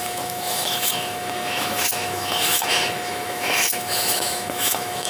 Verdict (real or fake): fake